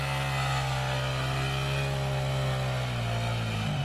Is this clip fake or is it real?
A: real